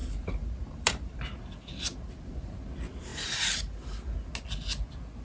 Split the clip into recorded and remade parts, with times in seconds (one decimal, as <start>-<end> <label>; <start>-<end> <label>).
0.0-1.2 remade; 1.2-5.2 recorded